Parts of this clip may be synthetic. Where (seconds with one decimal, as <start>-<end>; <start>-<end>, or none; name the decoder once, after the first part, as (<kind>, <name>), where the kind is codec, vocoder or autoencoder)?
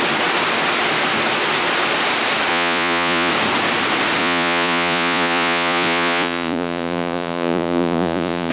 2.5-3.3 (vocoder, Vocos); 4.2-8.5